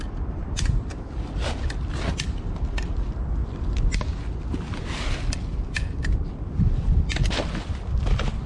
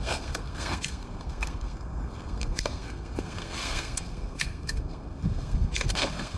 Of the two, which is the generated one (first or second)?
second